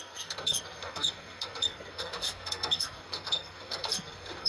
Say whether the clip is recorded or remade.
remade